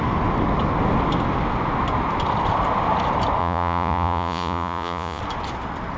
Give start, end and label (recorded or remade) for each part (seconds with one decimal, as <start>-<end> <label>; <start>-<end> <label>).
0.0-3.4 recorded; 3.4-5.2 remade; 5.2-6.0 recorded